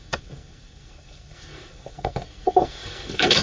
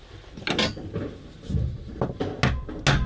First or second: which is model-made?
first